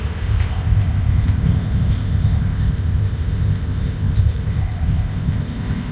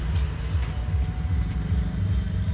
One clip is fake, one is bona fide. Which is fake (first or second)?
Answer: first